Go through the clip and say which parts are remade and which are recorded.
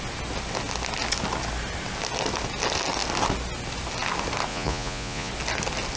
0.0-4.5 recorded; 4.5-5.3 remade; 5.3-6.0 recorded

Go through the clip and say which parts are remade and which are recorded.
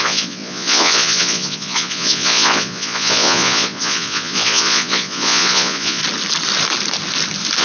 0.0-6.0 remade; 6.0-7.6 recorded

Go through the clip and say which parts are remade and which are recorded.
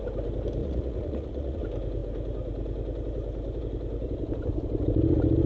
0.0-0.6 recorded; 0.6-1.6 remade; 1.6-5.5 recorded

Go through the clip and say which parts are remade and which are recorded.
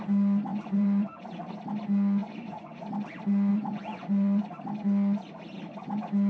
0.0-0.5 recorded; 0.5-1.5 remade; 1.5-2.2 recorded; 2.2-2.8 remade; 2.8-3.5 recorded; 3.5-4.4 remade; 4.4-6.3 recorded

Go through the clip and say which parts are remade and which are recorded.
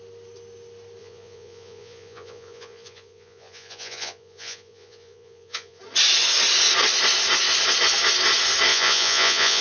0.0-1.0 recorded; 1.0-5.8 remade; 5.8-8.7 recorded; 8.7-9.6 remade